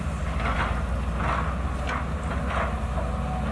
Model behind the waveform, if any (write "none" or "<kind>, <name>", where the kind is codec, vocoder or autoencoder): none